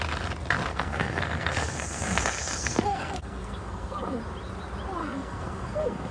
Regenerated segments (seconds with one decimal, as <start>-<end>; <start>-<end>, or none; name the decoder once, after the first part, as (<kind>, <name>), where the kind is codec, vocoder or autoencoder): 0.7-4.2 (codec, SNAC); 5.0-6.1